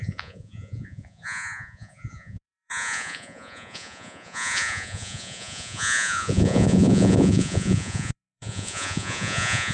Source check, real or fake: fake